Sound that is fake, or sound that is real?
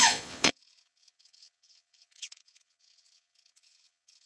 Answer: fake